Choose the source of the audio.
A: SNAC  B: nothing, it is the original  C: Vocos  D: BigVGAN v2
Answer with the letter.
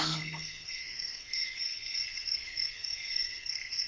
A